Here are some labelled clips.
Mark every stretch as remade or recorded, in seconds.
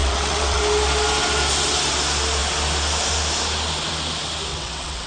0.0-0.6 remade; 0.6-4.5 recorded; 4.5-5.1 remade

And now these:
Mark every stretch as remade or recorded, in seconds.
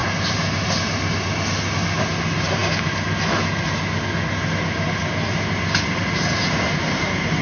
0.0-7.4 recorded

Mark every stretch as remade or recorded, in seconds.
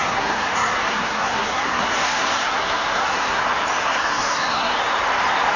0.0-3.4 remade; 3.4-3.8 recorded; 3.8-4.7 remade; 4.7-5.6 recorded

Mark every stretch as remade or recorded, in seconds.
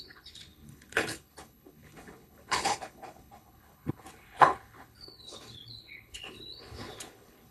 0.0-7.5 remade